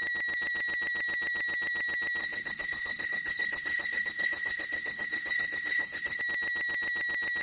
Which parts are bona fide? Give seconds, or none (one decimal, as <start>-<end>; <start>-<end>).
0.0-2.2; 6.2-7.4